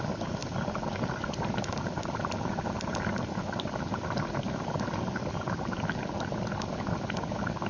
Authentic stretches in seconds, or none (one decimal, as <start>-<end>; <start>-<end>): 0.0-7.7

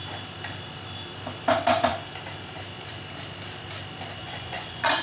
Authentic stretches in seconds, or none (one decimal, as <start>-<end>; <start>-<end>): 0.0-4.2

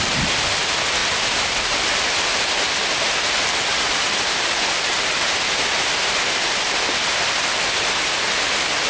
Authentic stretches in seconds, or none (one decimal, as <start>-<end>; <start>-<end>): 0.0-8.9